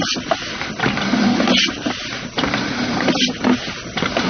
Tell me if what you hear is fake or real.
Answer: real